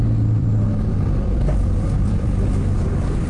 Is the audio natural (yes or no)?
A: no